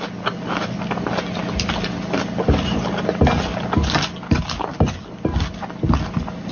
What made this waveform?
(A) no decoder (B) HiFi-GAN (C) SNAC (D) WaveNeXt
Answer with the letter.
A